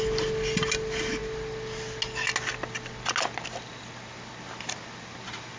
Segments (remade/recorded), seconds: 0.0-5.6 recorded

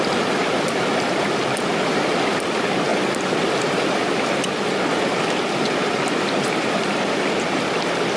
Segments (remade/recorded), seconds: 0.0-8.2 recorded